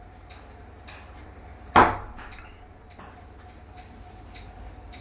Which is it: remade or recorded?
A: recorded